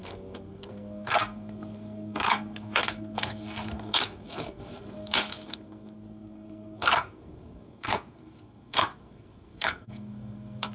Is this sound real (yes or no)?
no